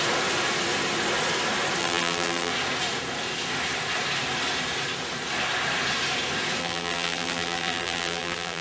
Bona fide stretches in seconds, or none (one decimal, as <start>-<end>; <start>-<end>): 0.0-1.8; 2.5-6.6